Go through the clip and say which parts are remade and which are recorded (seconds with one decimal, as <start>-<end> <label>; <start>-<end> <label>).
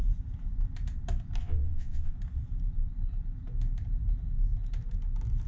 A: 0.0-1.4 recorded; 1.4-2.1 remade; 2.1-5.5 recorded